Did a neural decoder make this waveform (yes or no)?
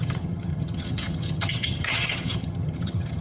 yes